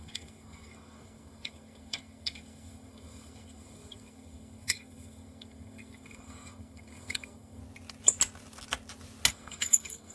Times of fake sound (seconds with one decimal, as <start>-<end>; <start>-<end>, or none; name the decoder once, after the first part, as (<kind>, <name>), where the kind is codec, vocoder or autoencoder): 0.0-7.6 (codec, SNAC); 9.3-10.1